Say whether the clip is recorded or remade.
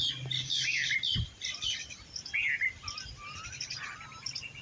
recorded